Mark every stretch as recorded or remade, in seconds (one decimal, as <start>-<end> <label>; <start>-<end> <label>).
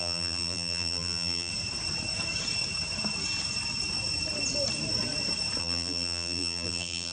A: 0.0-1.5 remade; 1.5-5.6 recorded; 5.6-7.1 remade